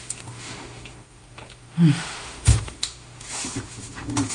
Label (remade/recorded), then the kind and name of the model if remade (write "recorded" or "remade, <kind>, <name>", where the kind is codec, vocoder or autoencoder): remade, autoencoder, DAC-VAE